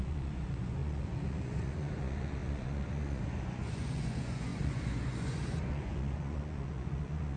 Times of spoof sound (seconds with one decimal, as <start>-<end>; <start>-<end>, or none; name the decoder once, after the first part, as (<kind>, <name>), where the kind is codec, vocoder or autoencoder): 0.0-7.4 (vocoder, Vocos)